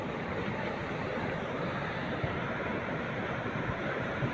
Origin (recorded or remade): remade